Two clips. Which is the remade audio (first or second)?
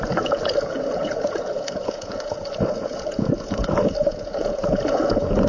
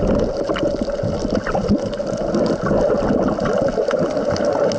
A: first